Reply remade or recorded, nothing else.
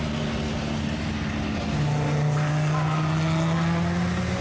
recorded